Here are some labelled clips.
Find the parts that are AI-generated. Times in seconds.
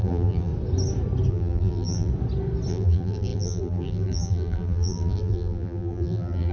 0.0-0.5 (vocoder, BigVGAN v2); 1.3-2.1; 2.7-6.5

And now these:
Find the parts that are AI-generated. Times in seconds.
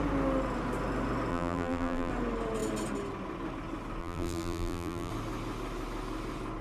1.3-2.1 (vocoder, BigVGAN v2); 4.0-5.1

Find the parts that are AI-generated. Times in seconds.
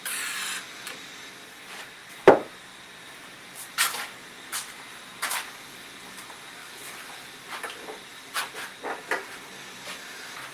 6.6-7.5 (vocoder, BigVGAN v2); 8.1-8.8